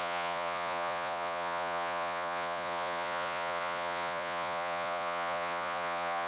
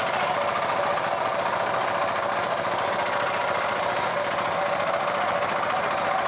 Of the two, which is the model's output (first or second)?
first